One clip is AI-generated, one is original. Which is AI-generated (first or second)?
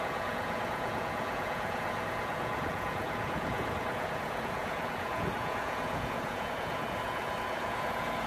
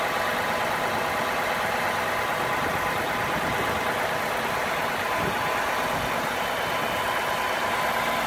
first